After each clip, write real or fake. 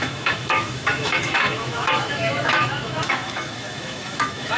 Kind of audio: fake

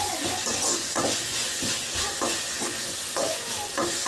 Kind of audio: fake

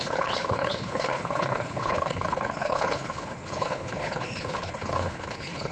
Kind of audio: fake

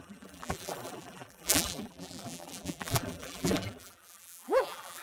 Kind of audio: fake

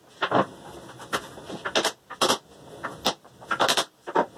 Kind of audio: real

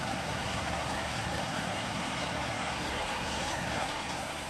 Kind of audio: fake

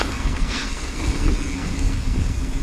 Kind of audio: fake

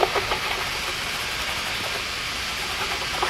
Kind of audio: real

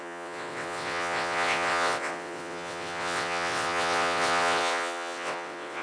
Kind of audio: fake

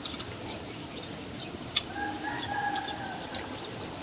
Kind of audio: real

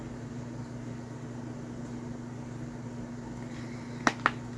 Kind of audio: real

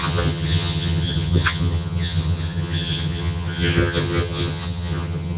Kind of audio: fake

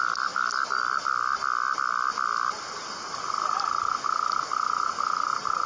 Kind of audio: real